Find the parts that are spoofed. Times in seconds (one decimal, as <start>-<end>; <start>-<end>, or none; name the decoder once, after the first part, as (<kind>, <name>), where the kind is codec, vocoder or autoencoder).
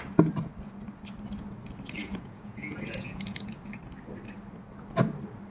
2.0-3.5 (vocoder, Vocos)